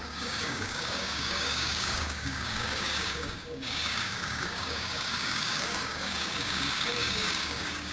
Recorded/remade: remade